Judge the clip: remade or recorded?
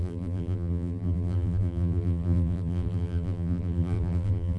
remade